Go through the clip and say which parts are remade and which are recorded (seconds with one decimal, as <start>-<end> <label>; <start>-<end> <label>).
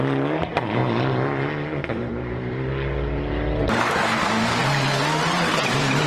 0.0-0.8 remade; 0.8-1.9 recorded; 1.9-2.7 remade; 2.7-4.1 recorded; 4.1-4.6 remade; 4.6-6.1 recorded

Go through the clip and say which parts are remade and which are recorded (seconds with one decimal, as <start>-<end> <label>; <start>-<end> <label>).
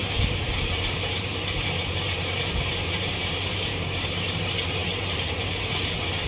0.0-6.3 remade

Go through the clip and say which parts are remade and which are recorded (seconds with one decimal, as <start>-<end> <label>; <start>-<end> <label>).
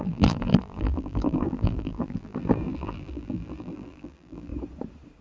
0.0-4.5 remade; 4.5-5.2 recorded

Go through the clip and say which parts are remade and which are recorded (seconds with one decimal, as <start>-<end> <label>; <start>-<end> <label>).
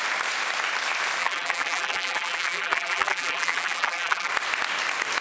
0.0-1.2 recorded; 1.2-4.3 remade; 4.3-5.2 recorded